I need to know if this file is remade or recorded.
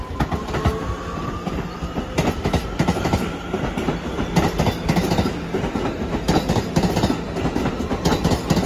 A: recorded